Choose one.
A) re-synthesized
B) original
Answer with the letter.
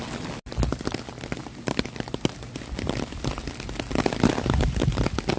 B